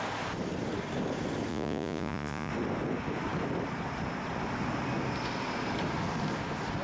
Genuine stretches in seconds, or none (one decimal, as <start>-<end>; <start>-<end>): 0.0-1.5; 2.5-6.8